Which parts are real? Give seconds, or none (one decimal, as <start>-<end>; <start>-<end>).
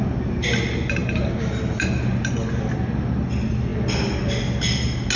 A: 0.0-5.2